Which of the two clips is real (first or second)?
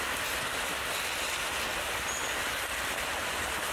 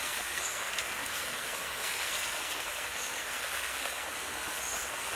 first